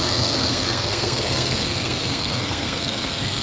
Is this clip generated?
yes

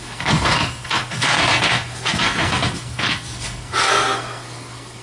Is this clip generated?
yes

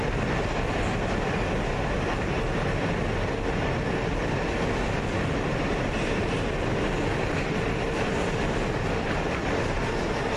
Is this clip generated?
no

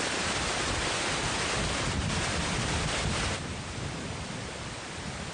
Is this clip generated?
no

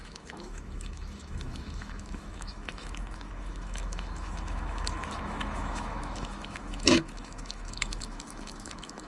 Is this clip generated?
yes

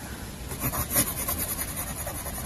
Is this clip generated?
no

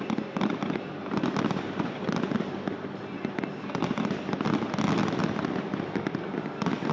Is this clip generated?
no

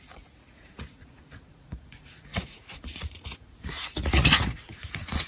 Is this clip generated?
yes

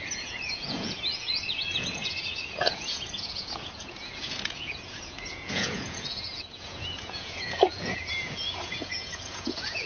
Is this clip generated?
yes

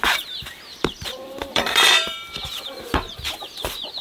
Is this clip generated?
yes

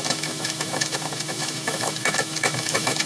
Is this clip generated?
yes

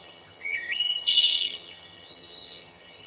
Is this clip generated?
yes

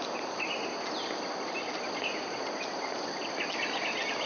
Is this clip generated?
no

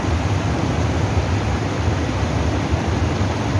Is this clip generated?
no